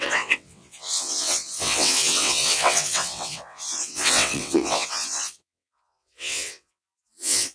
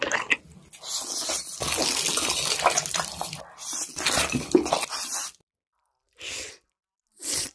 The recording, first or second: second